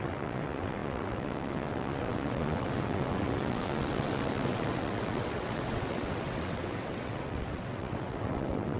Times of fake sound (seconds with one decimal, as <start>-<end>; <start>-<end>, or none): 0.0-8.8